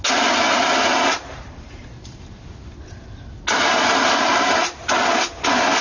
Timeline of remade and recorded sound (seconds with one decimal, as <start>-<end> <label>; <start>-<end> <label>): 0.0-0.9 recorded; 0.9-2.2 remade; 2.2-4.3 recorded; 4.3-4.9 remade; 4.9-5.8 recorded